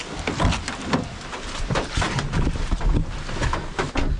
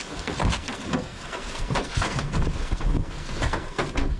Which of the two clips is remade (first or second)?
second